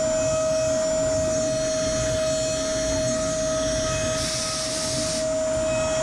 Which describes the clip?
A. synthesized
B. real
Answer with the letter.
B